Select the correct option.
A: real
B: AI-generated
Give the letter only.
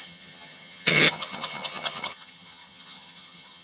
B